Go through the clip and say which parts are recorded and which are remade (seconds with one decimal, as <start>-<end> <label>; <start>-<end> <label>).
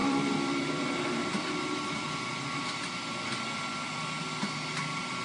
0.0-1.6 remade; 1.6-5.2 recorded